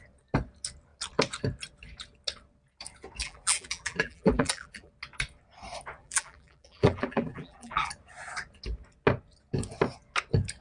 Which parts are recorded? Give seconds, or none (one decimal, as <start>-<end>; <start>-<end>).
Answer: 0.0-3.2; 4.9-6.0; 7.9-10.6